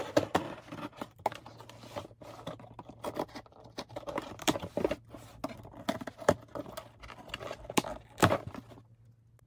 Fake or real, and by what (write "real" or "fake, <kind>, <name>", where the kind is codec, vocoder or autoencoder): real